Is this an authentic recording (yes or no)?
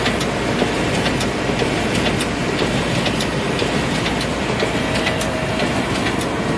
yes